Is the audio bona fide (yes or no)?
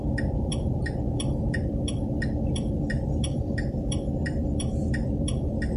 no